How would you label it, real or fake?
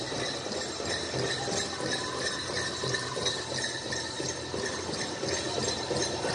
real